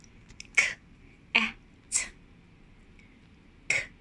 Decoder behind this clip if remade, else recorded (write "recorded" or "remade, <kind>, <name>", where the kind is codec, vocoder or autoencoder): recorded